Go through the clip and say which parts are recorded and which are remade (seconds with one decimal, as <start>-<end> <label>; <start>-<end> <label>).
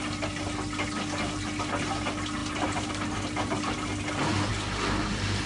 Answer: 0.0-5.5 recorded